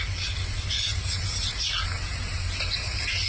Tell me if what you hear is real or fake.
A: real